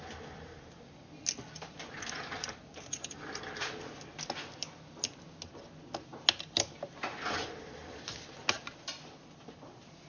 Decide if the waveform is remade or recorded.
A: recorded